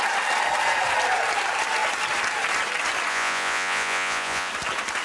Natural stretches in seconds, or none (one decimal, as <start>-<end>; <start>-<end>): 0.0-3.1; 4.5-5.0